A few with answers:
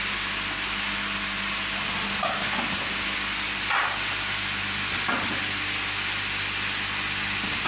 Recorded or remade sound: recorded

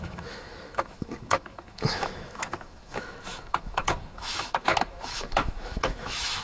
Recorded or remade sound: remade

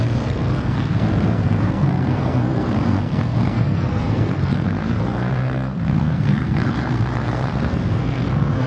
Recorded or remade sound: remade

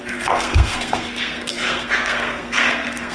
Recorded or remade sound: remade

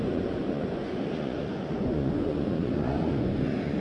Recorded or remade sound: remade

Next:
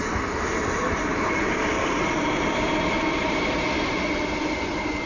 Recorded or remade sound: remade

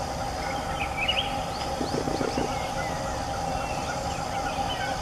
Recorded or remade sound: recorded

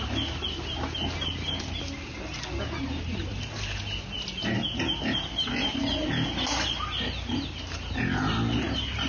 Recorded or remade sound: recorded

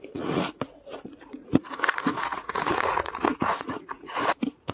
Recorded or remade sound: remade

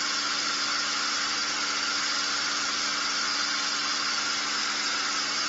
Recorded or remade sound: recorded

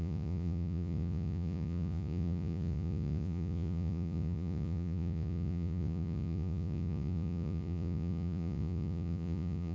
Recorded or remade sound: remade